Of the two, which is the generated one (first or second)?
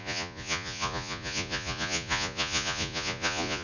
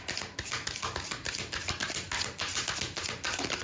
first